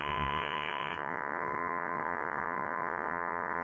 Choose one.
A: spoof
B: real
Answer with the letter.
A